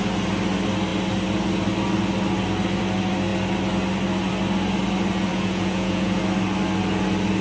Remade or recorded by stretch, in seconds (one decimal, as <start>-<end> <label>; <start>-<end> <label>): 0.0-5.3 recorded; 5.3-6.2 remade; 6.2-7.4 recorded